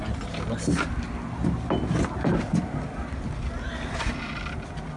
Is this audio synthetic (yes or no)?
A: no